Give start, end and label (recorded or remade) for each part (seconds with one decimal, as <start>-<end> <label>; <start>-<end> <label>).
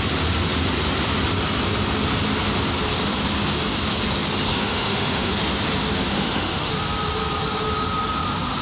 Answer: 0.0-4.5 recorded; 4.5-5.3 remade; 5.3-6.1 recorded; 6.1-6.7 remade; 6.7-8.6 recorded